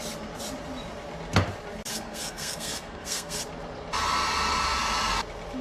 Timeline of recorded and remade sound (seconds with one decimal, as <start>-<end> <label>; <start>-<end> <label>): 0.0-1.9 recorded; 1.9-3.4 remade; 3.4-5.6 recorded